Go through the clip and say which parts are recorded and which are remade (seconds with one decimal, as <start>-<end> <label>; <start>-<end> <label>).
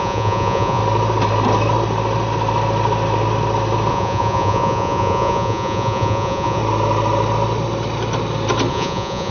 0.0-0.8 remade; 0.8-3.9 recorded; 3.9-6.6 remade; 6.6-8.7 recorded; 8.7-9.3 remade